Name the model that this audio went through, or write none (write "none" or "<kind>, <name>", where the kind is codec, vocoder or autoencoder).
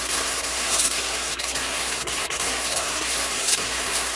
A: codec, SNAC